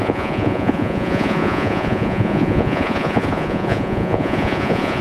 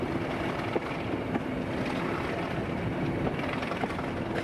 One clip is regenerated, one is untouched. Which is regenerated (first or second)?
first